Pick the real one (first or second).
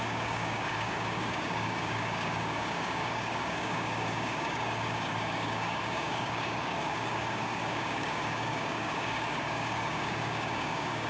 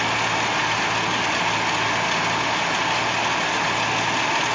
second